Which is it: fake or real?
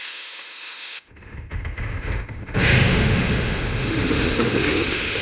fake